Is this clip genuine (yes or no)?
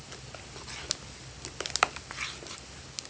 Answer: no